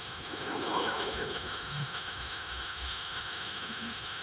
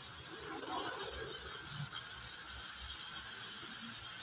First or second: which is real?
second